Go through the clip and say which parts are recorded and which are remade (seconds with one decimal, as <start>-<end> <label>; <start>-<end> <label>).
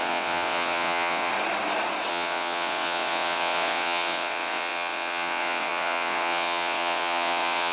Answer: 0.0-1.3 remade; 1.3-2.1 recorded; 2.1-7.7 remade